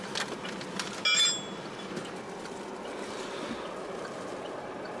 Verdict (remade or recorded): recorded